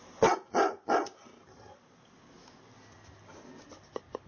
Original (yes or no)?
yes